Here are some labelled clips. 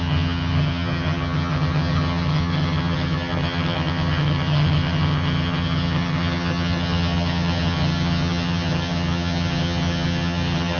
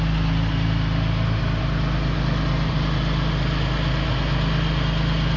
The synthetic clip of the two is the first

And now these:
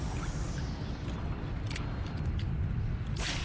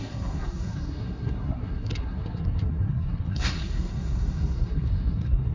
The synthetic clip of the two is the second